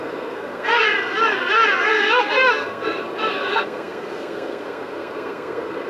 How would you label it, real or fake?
fake